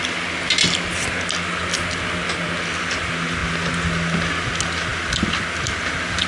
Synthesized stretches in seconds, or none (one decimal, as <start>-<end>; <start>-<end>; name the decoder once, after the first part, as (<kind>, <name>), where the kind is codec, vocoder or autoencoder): none